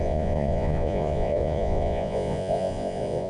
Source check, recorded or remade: remade